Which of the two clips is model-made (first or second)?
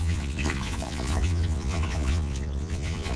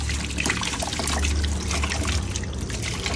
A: first